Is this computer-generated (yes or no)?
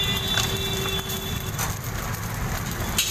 no